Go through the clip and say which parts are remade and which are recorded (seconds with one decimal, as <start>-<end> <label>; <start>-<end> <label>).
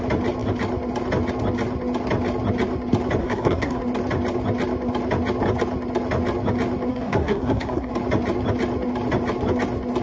0.0-3.2 recorded; 3.2-3.8 remade; 3.8-6.9 recorded; 6.9-7.9 remade; 7.9-10.0 recorded